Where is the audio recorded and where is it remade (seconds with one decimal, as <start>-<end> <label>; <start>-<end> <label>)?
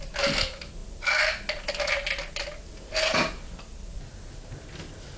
0.0-5.2 recorded